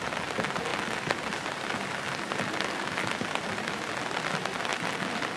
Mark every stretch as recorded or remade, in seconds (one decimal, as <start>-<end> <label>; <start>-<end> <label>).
0.0-5.4 recorded